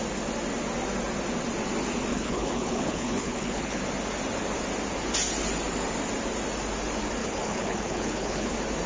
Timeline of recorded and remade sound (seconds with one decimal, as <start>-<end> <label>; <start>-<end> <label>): 0.0-2.1 recorded; 2.1-3.8 remade; 3.8-7.2 recorded; 7.2-8.5 remade; 8.5-8.9 recorded